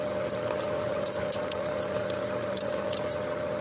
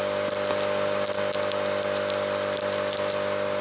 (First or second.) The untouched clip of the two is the second